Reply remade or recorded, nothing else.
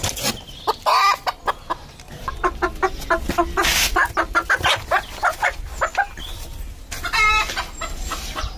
recorded